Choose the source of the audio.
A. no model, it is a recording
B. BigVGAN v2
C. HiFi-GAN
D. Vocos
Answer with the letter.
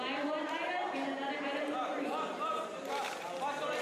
B